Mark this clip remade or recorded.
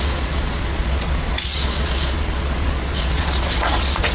remade